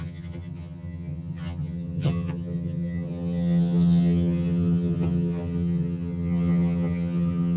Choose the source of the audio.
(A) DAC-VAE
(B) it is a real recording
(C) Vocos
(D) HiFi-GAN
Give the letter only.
D